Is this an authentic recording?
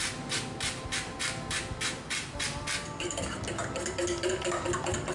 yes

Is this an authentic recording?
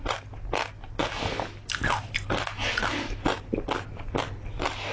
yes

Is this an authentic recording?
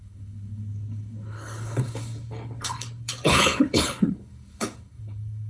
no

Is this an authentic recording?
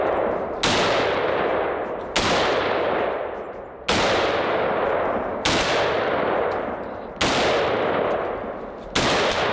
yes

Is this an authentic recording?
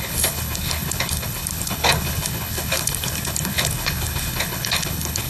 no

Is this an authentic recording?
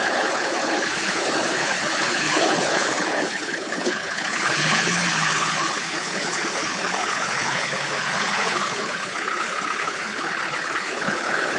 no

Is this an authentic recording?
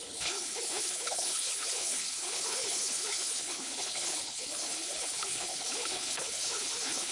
no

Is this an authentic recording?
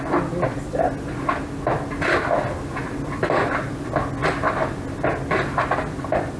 yes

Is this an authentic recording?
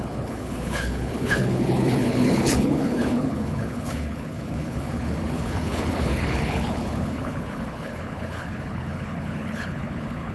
no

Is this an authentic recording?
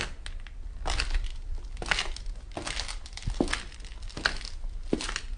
yes